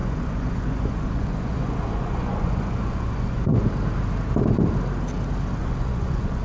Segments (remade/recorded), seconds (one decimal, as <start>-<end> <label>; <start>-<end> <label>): 0.0-3.7 remade; 3.7-5.6 recorded; 5.6-6.4 remade